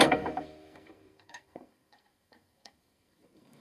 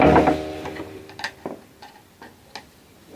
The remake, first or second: first